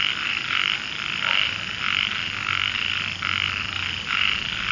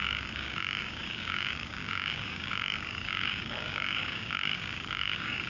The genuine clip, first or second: first